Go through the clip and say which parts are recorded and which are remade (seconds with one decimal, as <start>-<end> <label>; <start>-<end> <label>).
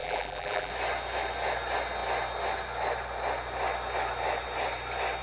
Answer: 0.0-0.7 remade; 0.7-5.2 recorded